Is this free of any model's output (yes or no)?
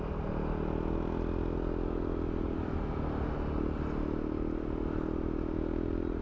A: yes